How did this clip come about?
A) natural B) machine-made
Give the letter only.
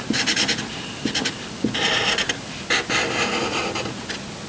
A